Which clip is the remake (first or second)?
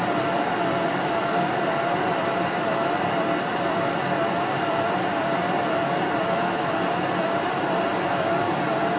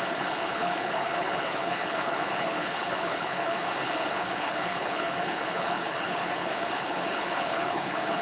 second